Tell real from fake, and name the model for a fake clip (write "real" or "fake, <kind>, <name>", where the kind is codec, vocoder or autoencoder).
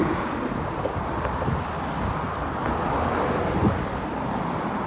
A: real